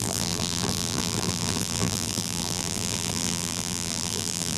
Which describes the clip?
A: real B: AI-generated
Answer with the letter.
B